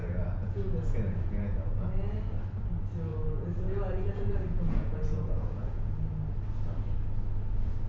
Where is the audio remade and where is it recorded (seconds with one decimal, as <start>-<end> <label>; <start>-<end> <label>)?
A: 0.0-1.9 remade; 1.9-3.1 recorded; 3.1-5.9 remade; 5.9-7.9 recorded